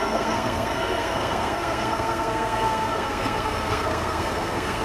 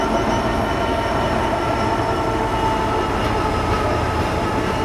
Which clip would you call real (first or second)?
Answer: second